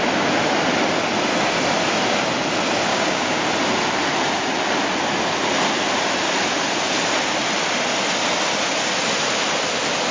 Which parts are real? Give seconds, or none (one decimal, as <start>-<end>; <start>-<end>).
0.0-2.9; 3.4-10.1